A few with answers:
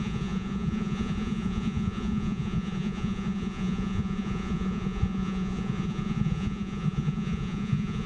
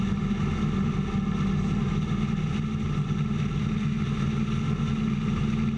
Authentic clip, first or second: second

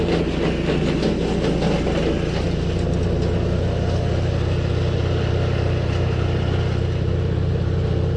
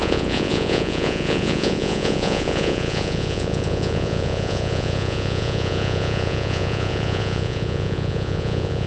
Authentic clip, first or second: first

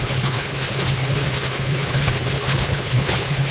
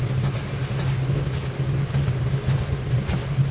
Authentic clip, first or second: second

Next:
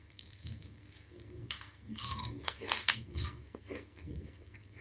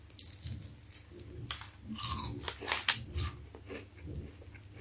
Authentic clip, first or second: second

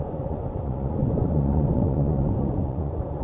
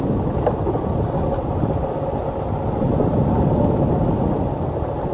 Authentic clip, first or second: second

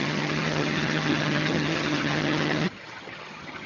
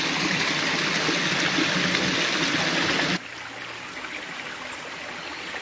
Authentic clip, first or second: second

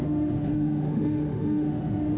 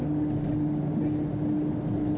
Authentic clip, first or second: second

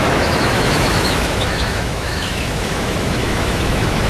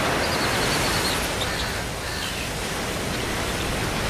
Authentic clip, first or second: second